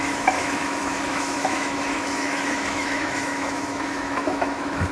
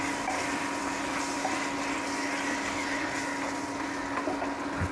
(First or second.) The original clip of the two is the second